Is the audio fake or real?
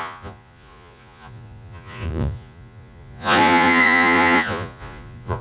fake